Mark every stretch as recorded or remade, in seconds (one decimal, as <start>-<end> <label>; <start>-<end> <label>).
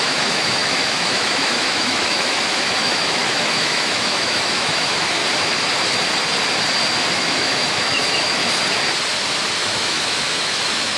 0.0-5.2 remade; 5.2-7.1 recorded; 7.1-8.4 remade; 8.4-9.6 recorded; 9.6-11.0 remade